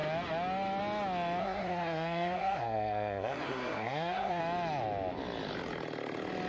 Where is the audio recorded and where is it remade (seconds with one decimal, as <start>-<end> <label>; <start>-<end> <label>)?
0.0-1.4 recorded; 1.4-4.4 remade; 4.4-6.5 recorded